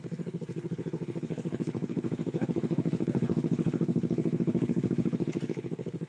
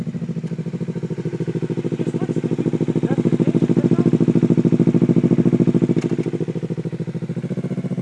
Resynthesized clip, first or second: first